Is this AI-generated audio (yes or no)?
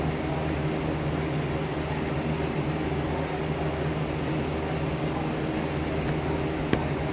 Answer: no